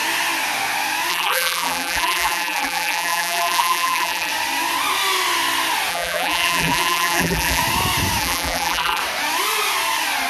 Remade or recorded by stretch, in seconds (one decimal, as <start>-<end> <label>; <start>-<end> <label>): 0.0-1.1 recorded; 1.1-4.3 remade; 4.3-5.9 recorded; 5.9-7.6 remade; 7.6-8.2 recorded; 8.2-9.0 remade; 9.0-10.3 recorded